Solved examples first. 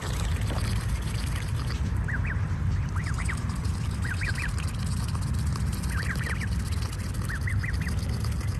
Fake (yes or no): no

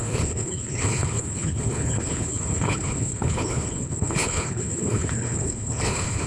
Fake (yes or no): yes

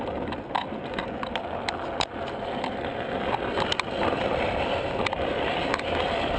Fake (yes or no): no